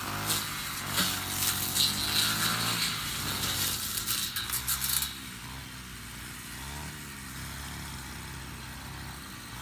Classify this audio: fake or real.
real